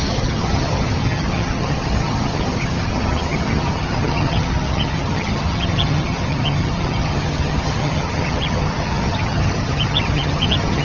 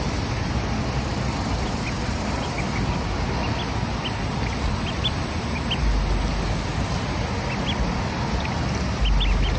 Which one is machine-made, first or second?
first